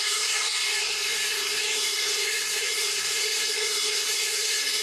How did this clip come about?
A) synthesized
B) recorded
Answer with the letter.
A